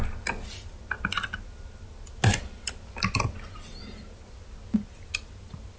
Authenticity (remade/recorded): recorded